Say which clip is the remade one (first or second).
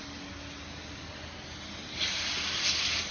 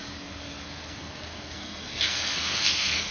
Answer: second